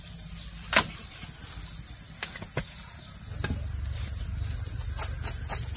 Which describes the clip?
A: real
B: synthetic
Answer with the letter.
A